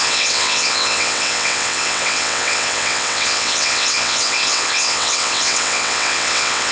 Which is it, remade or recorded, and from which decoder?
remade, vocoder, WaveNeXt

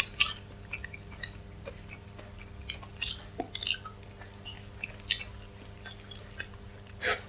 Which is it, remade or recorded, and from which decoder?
recorded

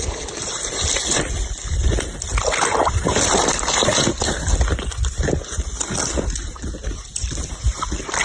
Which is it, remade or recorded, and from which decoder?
recorded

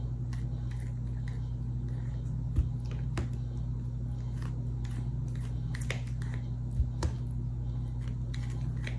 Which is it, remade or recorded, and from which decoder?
recorded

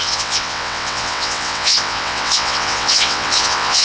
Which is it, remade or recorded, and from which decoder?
remade, vocoder, WaveNeXt